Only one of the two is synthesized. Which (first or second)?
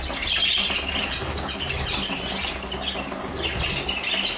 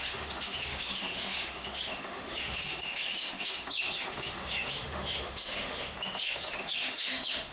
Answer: second